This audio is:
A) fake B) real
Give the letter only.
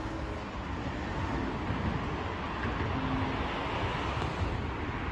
B